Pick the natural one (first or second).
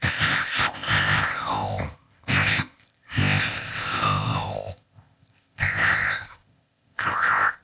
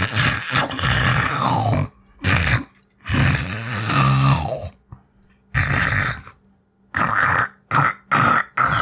second